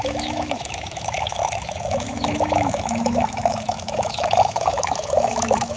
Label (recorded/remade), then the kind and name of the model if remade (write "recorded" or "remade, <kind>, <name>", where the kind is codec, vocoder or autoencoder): remade, autoencoder, DAC-VAE